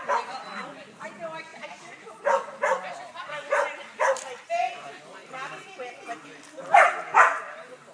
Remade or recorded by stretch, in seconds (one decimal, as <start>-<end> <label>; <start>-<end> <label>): 0.0-1.5 recorded; 1.5-4.5 remade; 4.5-7.9 recorded